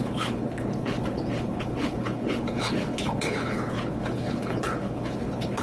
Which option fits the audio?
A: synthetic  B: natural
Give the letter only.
A